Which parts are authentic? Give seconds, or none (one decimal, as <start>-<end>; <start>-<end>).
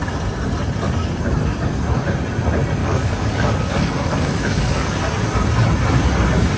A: 0.0-2.8; 5.0-6.6